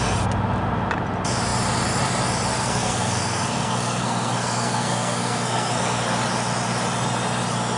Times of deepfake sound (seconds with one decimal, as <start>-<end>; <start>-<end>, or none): 2.5-6.0